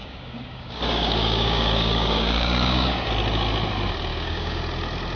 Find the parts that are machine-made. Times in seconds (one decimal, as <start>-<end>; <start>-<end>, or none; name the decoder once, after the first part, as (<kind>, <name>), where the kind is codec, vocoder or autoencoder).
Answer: 0.0-3.1 (codec, DAC); 4.1-4.6